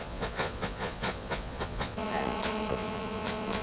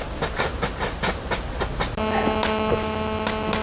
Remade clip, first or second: first